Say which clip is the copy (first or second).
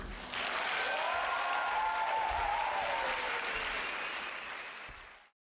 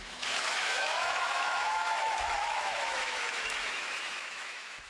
second